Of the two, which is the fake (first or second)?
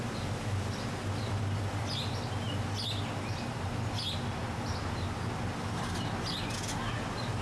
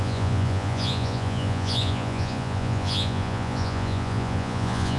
second